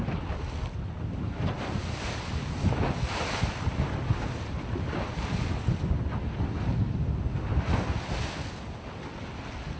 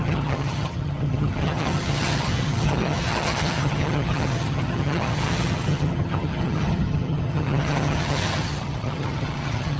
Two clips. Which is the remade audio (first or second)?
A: second